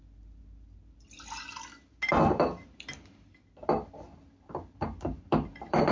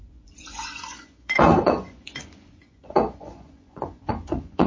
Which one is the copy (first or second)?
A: second